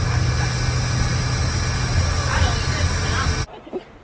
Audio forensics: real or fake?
real